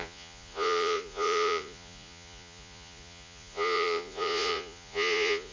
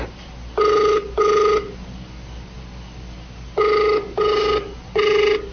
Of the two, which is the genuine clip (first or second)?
second